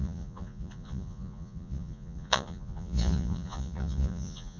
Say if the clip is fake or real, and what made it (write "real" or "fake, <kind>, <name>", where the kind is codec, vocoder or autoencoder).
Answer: fake, vocoder, Vocos